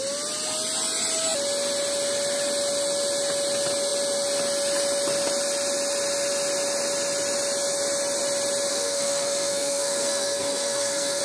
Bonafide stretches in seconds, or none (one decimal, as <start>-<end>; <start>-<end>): 0.0-8.7